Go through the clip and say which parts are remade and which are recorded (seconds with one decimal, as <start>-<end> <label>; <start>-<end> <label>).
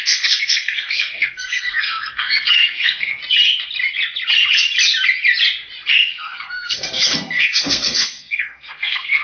0.0-3.2 remade; 3.2-5.9 recorded; 5.9-9.2 remade